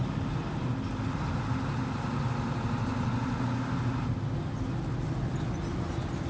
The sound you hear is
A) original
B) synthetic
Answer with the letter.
A